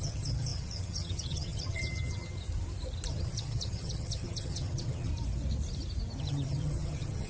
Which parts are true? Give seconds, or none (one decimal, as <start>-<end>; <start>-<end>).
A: 2.3-3.1; 5.1-6.2